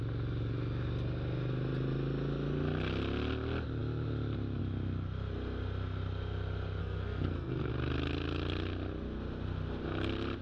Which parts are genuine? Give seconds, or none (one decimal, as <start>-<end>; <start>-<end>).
0.0-6.8; 7.7-10.4